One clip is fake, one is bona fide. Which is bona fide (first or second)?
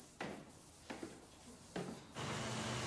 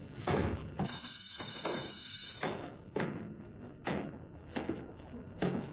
first